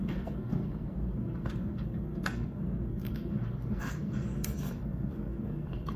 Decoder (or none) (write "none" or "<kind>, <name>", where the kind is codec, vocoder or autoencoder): codec, SNAC